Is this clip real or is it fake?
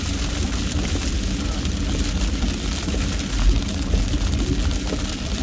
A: real